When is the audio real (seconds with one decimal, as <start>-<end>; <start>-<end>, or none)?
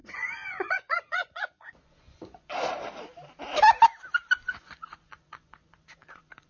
2.5-4.6